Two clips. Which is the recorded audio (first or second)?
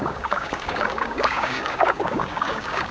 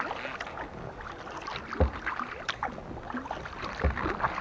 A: second